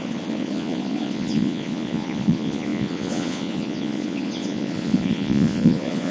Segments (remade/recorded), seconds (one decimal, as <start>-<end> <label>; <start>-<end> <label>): 0.0-6.1 remade